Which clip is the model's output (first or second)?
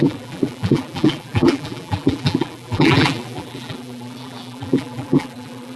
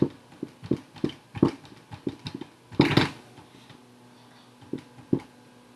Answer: first